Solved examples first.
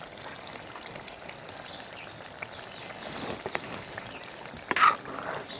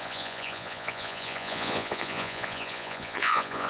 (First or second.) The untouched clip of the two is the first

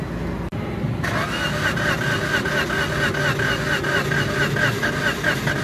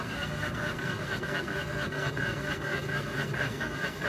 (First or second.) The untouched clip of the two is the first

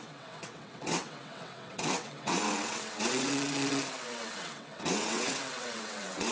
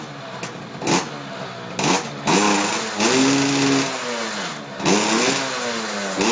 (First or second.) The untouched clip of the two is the second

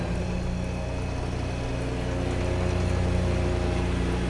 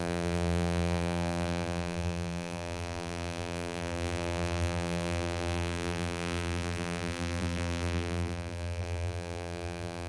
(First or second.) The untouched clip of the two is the first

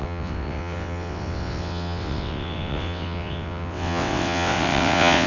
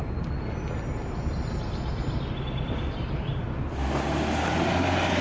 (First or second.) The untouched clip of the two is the second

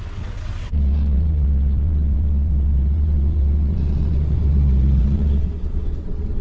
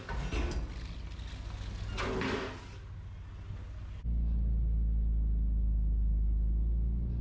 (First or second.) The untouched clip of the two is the second